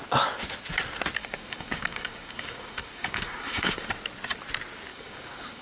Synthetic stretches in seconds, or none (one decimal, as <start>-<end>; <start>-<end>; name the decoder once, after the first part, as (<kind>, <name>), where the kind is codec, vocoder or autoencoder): 1.2-3.9 (codec, DAC); 4.9-5.6